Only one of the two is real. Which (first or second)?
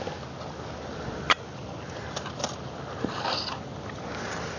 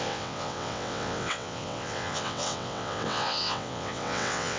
first